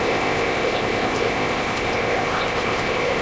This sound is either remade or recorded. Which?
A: remade